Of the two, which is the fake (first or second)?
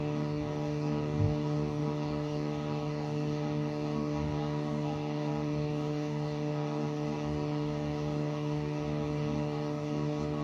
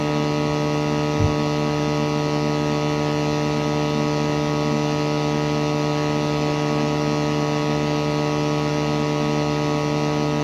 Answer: first